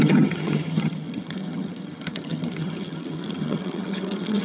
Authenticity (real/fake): fake